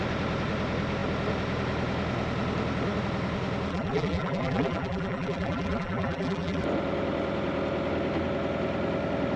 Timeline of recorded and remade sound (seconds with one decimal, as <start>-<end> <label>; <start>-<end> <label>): 0.0-3.7 recorded; 3.7-6.6 remade; 6.6-9.4 recorded